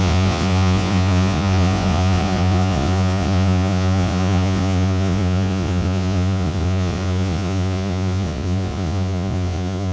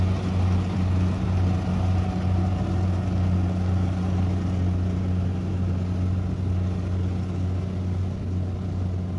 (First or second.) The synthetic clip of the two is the first